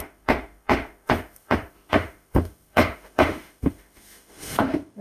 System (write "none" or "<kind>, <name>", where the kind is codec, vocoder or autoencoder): autoencoder, DAC-VAE